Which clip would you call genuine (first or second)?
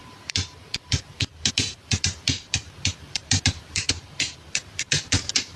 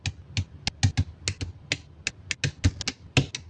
second